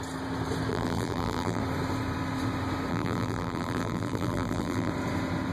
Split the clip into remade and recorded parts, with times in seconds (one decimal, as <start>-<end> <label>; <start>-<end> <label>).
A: 0.0-0.7 recorded; 0.7-1.6 remade; 1.6-2.9 recorded; 2.9-4.9 remade; 4.9-5.5 recorded